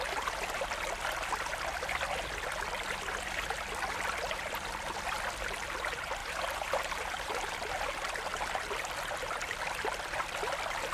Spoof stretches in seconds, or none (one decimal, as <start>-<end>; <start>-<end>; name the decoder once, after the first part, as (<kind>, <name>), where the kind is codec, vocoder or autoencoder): 6.2-7.5 (vocoder, BigVGAN v2)